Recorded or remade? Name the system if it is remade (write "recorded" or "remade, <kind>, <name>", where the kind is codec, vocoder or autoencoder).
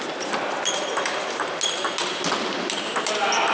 recorded